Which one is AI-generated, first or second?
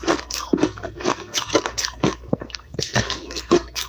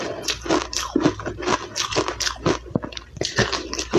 first